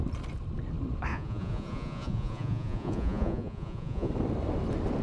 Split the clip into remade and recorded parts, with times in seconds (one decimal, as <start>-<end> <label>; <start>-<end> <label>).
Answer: 0.0-1.1 recorded; 1.1-4.1 remade; 4.1-5.0 recorded

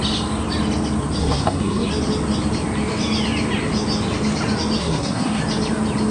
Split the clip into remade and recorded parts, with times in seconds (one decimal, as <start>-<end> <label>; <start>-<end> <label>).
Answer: 0.0-1.2 recorded; 1.2-1.9 remade; 1.9-4.8 recorded; 4.8-5.4 remade; 5.4-6.1 recorded

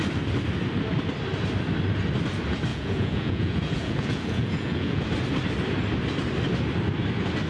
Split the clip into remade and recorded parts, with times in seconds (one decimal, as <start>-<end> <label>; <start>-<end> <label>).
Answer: 0.0-2.7 recorded; 2.7-5.0 remade; 5.0-7.5 recorded

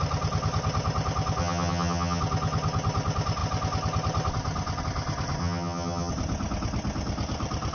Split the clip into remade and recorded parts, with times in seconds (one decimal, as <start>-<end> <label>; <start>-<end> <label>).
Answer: 0.0-1.4 recorded; 1.4-2.2 remade; 2.2-5.4 recorded; 5.4-6.1 remade; 6.1-7.7 recorded

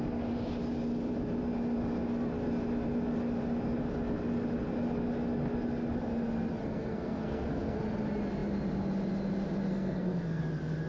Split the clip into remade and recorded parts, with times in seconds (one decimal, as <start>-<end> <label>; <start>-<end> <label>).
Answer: 0.0-6.6 recorded; 6.6-7.8 remade; 7.8-9.7 recorded; 9.7-10.4 remade; 10.4-10.9 recorded

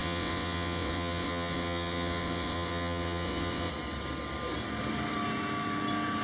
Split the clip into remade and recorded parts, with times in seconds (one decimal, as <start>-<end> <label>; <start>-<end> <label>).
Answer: 0.0-3.7 remade; 3.7-6.2 recorded

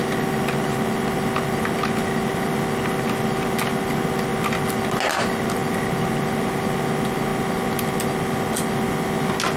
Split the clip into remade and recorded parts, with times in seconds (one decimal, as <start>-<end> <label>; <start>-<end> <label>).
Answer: 0.0-9.6 recorded